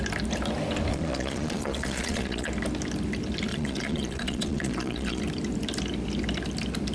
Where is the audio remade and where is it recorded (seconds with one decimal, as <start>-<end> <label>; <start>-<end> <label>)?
0.0-0.9 recorded; 0.9-2.5 remade; 2.5-3.5 recorded; 3.5-5.2 remade; 5.2-6.9 recorded